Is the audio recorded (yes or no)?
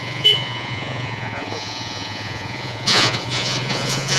no